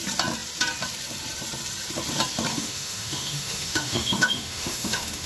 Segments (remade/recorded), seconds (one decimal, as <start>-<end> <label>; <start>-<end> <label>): 0.0-2.5 recorded; 2.5-5.3 remade